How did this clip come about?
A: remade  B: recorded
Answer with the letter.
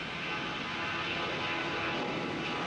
B